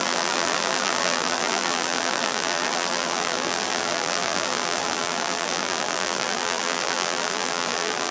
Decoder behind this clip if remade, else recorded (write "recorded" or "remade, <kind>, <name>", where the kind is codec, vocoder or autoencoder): remade, vocoder, BigVGAN v2